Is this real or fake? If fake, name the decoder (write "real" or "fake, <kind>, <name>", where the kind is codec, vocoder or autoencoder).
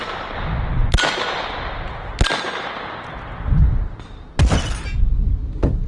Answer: real